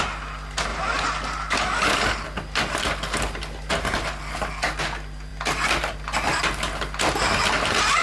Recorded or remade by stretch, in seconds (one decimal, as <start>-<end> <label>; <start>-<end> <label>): 0.0-8.0 recorded